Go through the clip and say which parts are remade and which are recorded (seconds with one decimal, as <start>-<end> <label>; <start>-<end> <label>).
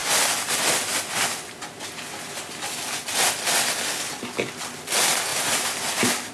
0.0-5.3 recorded; 5.3-6.3 remade